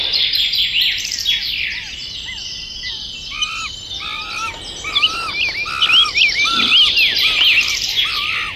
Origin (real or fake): real